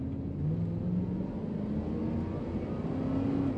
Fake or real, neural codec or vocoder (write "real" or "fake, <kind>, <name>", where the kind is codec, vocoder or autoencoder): real